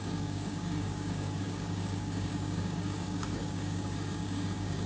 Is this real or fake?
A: fake